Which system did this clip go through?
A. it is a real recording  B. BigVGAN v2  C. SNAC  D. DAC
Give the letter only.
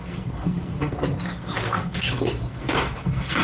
C